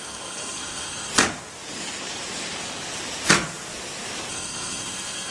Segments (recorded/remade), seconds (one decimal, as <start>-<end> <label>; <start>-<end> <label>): 0.0-1.1 remade; 1.1-4.3 recorded; 4.3-5.3 remade